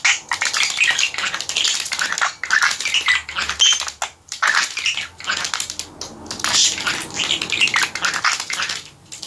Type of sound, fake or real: real